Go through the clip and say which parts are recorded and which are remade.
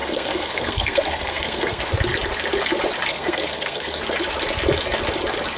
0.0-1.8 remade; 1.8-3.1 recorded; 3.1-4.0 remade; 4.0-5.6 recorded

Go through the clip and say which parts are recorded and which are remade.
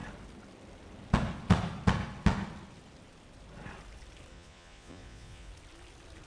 0.0-4.3 recorded; 4.3-5.5 remade; 5.5-6.3 recorded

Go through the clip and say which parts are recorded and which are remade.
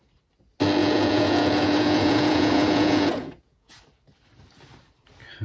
0.0-0.8 recorded; 0.8-3.8 remade; 3.8-5.4 recorded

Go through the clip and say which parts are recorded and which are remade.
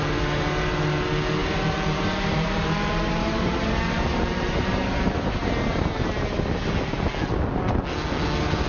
0.0-1.4 recorded; 1.4-6.3 remade; 6.3-8.7 recorded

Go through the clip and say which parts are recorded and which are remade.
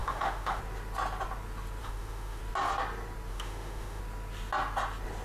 0.0-0.6 remade; 0.6-1.8 recorded; 1.8-2.4 remade; 2.4-3.3 recorded; 3.3-4.0 remade; 4.0-5.2 recorded